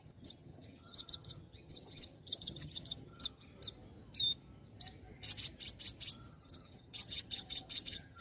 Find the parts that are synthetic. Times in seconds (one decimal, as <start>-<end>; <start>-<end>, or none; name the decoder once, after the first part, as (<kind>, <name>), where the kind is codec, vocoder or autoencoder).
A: 0.0-3.5 (vocoder, HiFi-GAN); 6.3-8.2